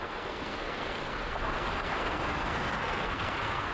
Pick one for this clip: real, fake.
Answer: fake